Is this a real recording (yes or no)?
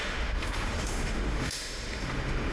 no